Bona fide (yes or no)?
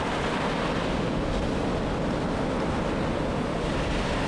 yes